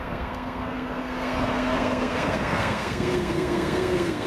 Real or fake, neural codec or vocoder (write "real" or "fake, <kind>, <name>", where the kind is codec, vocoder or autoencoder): fake, codec, SNAC